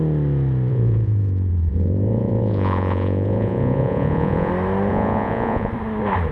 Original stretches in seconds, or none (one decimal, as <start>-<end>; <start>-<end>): 0.0-0.7; 4.5-4.9; 5.7-6.3